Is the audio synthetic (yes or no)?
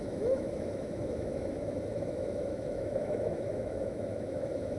yes